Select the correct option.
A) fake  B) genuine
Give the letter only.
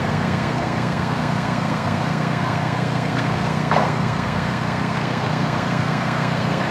A